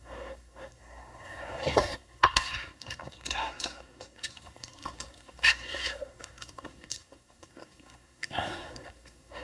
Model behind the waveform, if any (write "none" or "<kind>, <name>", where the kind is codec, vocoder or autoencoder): codec, SNAC